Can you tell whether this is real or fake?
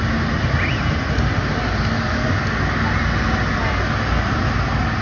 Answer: real